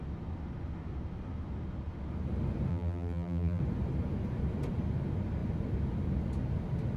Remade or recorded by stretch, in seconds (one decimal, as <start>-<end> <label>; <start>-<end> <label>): 0.0-2.7 recorded; 2.7-3.6 remade; 3.6-7.0 recorded

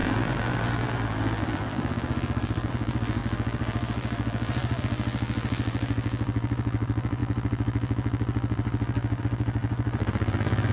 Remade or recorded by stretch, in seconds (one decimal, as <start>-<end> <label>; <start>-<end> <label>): 0.0-10.7 remade

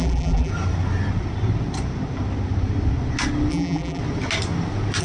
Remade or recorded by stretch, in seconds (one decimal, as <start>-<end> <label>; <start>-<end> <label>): 0.0-0.5 remade; 0.5-3.5 recorded; 3.5-4.0 remade; 4.0-5.0 recorded